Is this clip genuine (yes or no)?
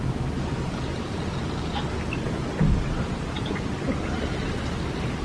yes